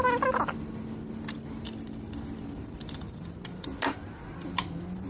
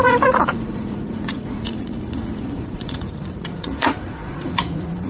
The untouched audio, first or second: first